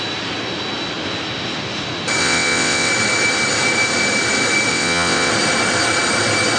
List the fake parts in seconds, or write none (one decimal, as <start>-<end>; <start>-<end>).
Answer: 2.2-2.9; 4.7-5.3